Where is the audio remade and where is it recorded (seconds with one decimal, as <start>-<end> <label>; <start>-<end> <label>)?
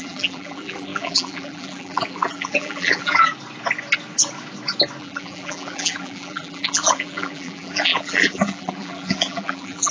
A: 0.0-3.3 remade; 3.3-5.0 recorded; 5.0-9.9 remade